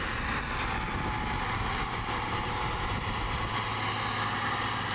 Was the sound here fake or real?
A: real